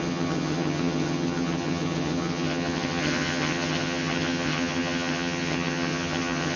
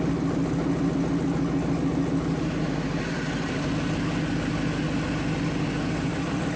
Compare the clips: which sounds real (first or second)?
second